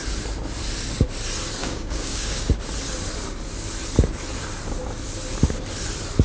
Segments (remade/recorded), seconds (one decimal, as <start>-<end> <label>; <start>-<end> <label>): 0.0-1.6 recorded; 1.6-2.5 remade; 2.5-6.2 recorded